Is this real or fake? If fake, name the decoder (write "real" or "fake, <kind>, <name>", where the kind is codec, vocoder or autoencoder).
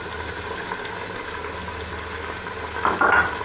real